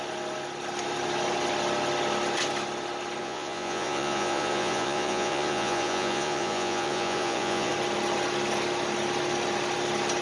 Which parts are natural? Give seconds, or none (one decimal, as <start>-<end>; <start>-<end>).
0.0-3.2; 7.7-10.2

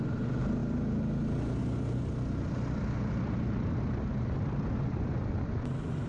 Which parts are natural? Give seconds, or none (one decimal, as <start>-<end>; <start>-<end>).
0.0-6.1

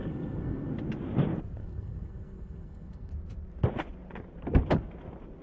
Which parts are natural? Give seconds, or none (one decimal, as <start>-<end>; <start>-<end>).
0.7-1.6; 3.1-5.4

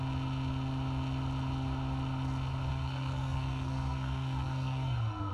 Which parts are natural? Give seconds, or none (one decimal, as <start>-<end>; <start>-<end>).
0.0-2.7